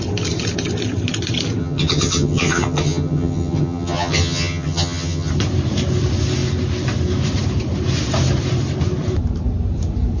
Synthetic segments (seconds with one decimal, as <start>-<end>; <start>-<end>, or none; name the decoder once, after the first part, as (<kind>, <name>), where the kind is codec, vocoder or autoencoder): 1.6-5.3 (vocoder, HiFi-GAN)